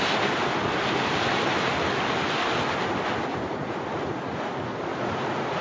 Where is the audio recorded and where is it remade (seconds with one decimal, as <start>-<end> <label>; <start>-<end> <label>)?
0.0-3.3 recorded; 3.3-4.5 remade; 4.5-4.9 recorded; 4.9-5.6 remade